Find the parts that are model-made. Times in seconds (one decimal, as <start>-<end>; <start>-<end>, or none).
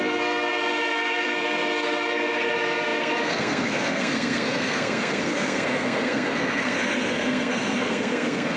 0.0-8.6